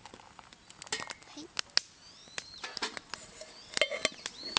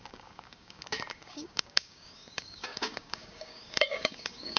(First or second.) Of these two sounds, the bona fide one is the first